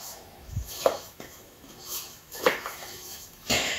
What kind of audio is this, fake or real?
fake